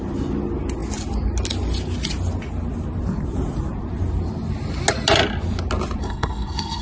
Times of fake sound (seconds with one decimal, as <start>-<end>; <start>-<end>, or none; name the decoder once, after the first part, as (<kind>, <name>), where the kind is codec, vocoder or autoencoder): 6.0-6.8 (codec, SNAC)